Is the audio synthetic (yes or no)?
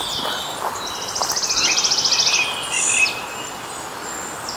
no